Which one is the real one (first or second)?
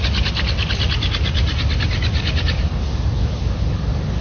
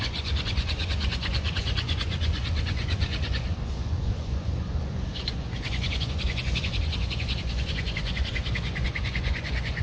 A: first